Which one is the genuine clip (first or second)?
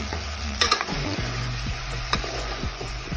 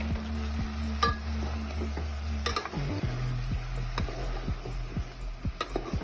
second